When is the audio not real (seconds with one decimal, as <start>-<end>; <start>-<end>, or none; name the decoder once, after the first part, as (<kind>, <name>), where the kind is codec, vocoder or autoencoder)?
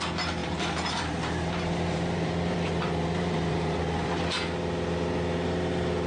0.4-4.1 (vocoder, BigVGAN v2)